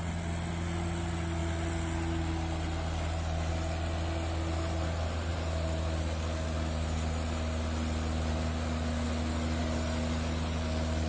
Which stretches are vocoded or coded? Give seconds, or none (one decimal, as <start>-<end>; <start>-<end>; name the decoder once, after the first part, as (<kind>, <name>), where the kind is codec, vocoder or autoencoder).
none